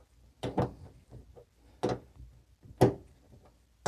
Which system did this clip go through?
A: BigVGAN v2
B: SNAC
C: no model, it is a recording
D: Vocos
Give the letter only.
C